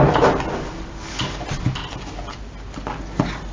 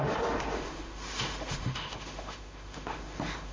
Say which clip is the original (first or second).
first